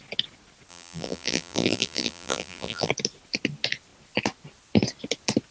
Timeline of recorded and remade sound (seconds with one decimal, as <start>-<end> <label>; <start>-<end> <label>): 0.0-0.7 recorded; 0.7-2.9 remade; 2.9-5.5 recorded